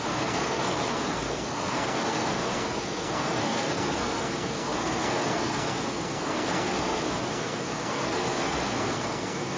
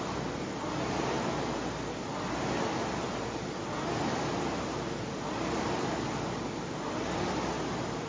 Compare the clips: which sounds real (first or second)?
second